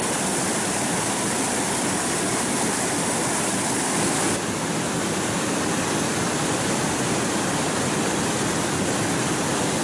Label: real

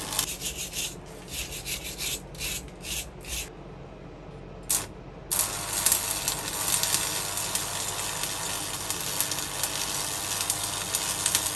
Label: real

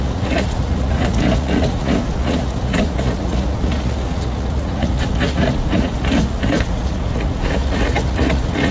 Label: fake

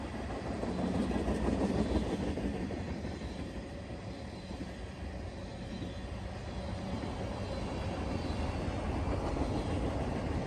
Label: real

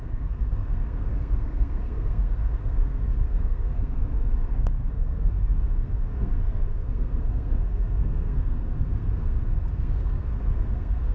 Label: fake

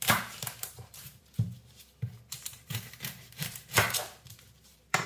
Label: fake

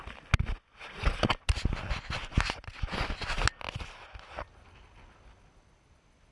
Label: real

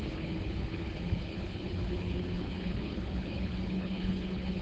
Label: fake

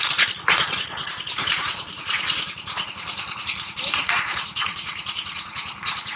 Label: fake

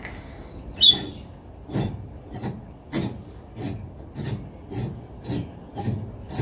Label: real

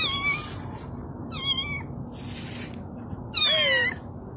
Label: real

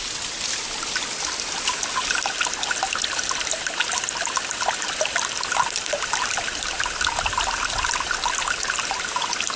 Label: real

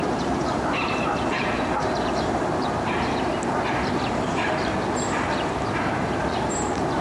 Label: fake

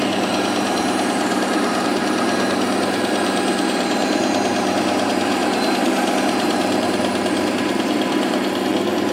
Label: fake